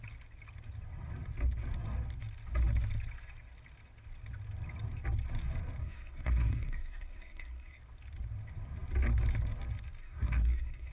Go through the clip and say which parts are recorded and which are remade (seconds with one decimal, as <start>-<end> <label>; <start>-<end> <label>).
0.0-5.8 recorded; 5.8-7.8 remade; 7.8-10.0 recorded; 10.0-10.9 remade